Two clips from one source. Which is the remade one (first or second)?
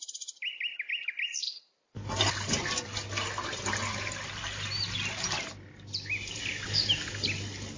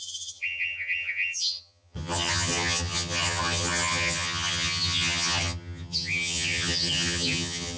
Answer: second